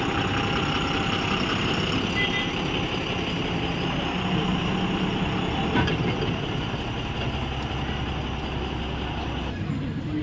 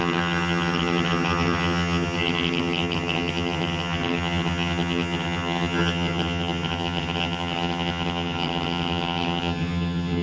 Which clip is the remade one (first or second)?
second